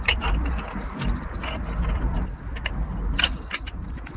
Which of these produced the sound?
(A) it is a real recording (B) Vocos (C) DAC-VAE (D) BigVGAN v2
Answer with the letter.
A